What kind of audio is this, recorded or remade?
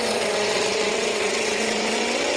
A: remade